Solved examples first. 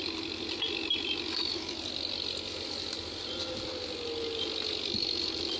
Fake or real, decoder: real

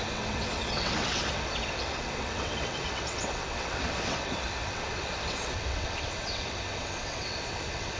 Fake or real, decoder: fake, vocoder, WaveNeXt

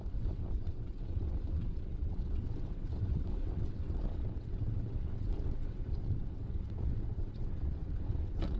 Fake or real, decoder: fake, vocoder, WaveNeXt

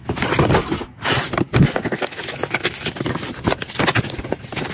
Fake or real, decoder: real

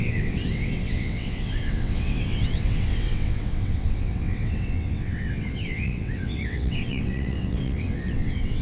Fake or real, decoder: fake, vocoder, WaveNeXt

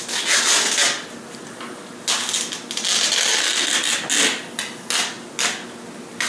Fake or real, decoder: real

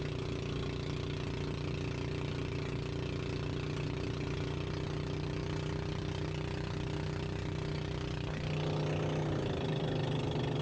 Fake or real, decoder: real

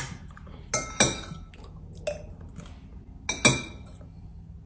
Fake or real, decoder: real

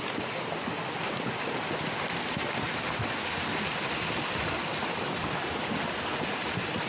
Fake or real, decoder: real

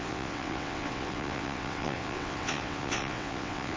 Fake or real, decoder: fake, vocoder, WaveNeXt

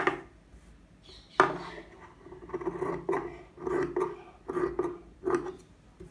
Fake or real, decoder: real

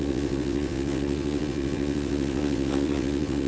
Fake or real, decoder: fake, vocoder, WaveNeXt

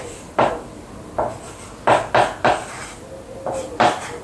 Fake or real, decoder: real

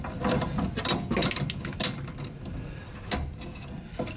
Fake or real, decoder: real